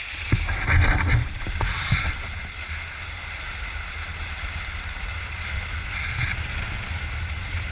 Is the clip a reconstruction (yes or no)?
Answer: no